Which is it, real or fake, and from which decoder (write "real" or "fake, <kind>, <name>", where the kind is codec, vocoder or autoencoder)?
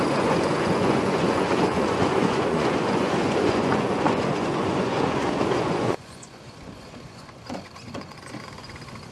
fake, vocoder, Vocos